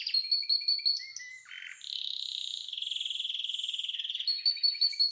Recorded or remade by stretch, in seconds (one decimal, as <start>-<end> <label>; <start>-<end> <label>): 0.0-5.1 recorded